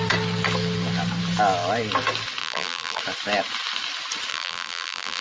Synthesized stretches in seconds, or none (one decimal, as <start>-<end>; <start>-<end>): 2.4-3.0; 4.3-5.2